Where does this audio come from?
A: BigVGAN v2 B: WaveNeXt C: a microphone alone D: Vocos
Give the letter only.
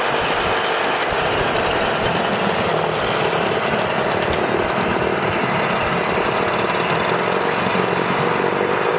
C